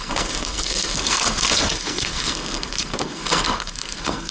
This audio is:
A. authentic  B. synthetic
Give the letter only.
B